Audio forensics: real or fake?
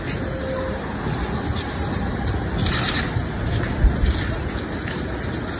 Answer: real